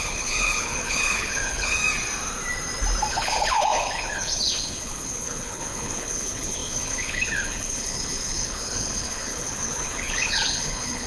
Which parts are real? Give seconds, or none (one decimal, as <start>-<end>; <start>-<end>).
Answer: 1.8-3.1